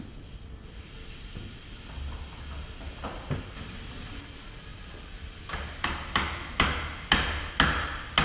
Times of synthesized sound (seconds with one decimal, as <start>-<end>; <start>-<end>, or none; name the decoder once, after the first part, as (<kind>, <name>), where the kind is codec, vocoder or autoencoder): none